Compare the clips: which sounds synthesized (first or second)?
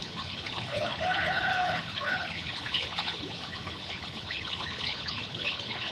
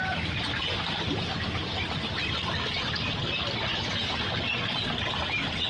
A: first